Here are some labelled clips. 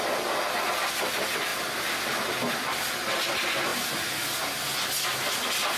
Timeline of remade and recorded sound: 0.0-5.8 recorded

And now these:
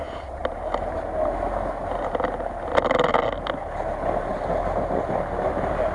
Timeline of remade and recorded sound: 0.0-4.3 recorded; 4.3-4.8 remade; 4.8-5.9 recorded

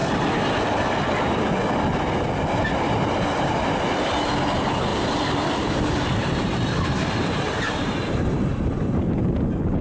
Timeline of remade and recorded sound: 0.0-4.9 recorded; 4.9-9.0 remade; 9.0-9.8 recorded